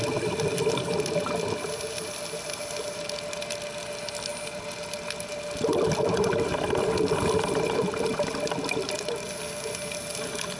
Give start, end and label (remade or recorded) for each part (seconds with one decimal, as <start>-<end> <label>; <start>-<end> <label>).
0.0-10.6 recorded